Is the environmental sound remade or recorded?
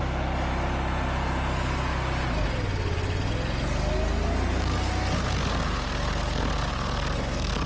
recorded